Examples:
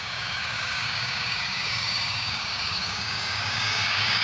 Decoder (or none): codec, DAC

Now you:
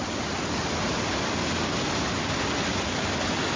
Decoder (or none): none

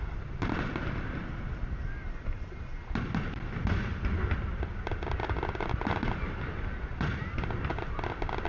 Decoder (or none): none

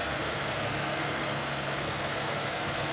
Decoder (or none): codec, SNAC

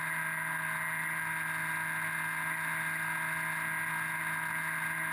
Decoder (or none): none